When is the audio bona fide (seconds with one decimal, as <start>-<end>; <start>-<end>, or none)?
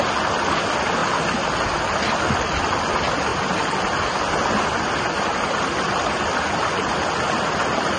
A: 0.0-8.0